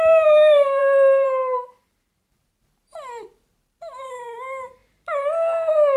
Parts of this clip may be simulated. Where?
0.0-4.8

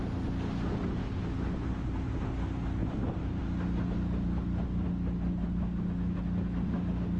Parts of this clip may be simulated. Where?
2.8-3.4

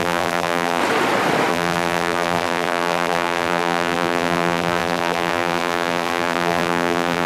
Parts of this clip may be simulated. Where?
0.0-0.8; 1.5-7.3

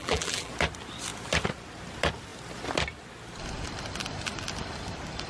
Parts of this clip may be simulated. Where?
0.0-0.5

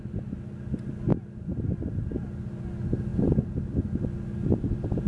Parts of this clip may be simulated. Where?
none

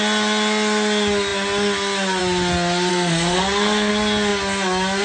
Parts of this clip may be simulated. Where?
2.9-3.9